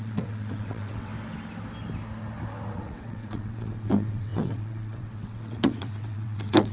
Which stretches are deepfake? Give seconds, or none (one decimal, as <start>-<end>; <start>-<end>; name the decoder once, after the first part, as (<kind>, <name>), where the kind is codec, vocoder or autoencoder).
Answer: 0.0-1.1 (vocoder, WaveNeXt); 2.7-6.7